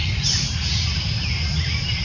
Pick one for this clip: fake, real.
real